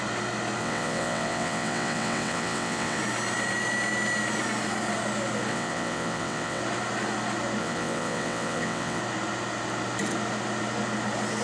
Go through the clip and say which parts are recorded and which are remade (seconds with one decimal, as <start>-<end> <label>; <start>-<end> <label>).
0.0-0.6 recorded; 0.6-3.0 remade; 3.0-5.5 recorded; 5.5-6.6 remade; 6.6-7.6 recorded; 7.6-9.0 remade; 9.0-11.4 recorded